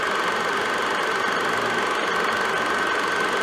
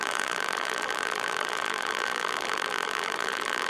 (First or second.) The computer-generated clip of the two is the second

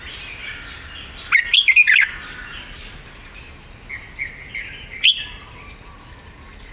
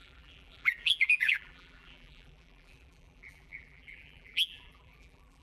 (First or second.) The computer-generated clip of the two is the second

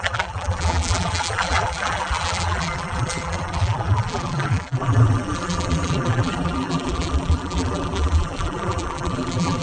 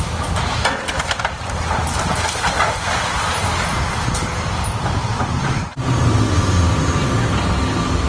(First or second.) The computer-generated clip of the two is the first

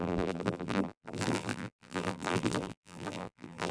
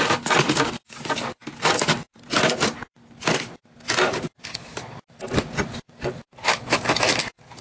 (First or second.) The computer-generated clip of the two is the first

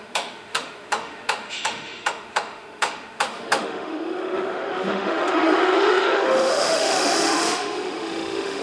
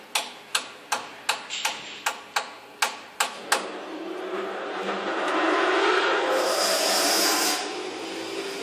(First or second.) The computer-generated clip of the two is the first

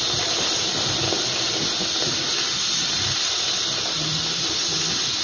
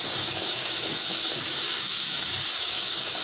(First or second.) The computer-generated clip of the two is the second